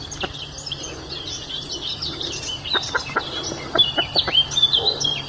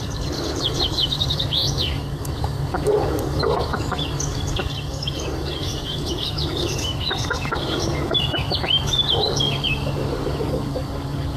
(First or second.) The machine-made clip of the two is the second